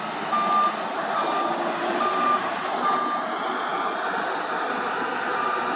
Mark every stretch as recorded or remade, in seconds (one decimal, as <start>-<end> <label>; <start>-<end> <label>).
0.0-1.9 recorded; 1.9-2.6 remade; 2.6-5.8 recorded